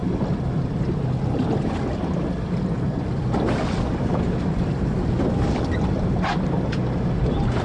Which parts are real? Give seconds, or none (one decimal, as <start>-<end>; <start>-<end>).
0.0-7.6